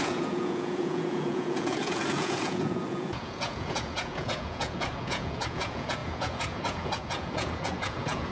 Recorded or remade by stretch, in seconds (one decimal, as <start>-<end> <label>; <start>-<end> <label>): 0.0-8.3 remade